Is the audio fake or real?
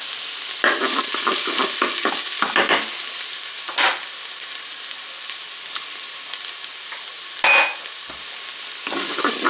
real